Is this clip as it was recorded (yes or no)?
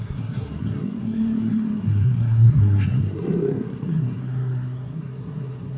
no